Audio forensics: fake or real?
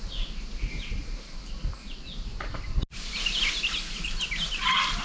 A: real